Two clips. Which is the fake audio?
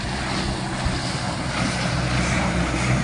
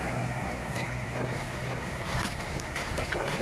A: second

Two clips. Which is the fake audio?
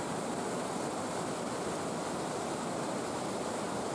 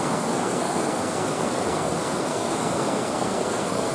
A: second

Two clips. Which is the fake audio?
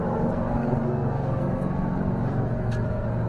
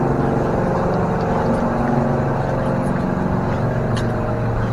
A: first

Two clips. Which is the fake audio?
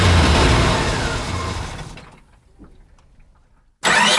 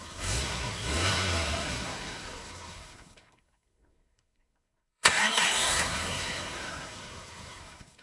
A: second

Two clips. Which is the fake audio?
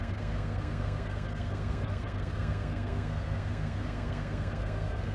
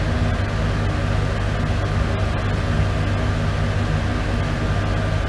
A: first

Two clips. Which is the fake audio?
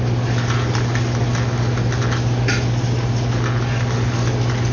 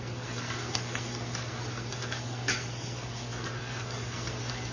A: second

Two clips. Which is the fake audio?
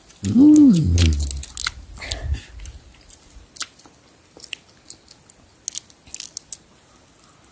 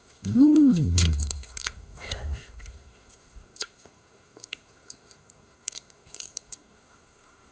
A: second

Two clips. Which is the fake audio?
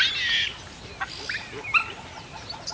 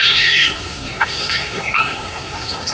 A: second